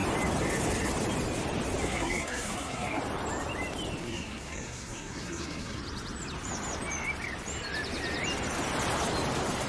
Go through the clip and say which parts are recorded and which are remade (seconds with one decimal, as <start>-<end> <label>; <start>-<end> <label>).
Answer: 0.0-1.8 recorded; 1.8-3.0 remade; 3.0-4.0 recorded; 4.0-5.8 remade; 5.8-9.7 recorded